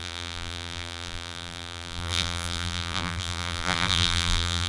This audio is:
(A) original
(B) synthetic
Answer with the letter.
B